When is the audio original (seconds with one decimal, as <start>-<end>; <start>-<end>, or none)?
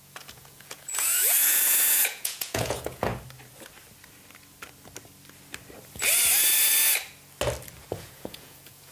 3.1-7.9